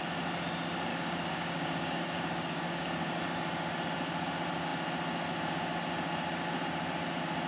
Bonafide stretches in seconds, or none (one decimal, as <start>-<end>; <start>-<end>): 0.0-0.9; 3.1-7.5